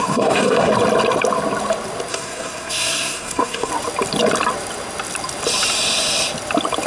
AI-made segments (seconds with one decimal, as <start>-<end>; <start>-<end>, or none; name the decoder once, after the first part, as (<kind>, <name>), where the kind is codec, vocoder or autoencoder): 0.0-0.7 (codec, SNAC); 2.1-3.7